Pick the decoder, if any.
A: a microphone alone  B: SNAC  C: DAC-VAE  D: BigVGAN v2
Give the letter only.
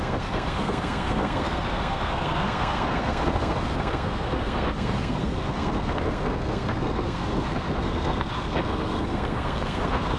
B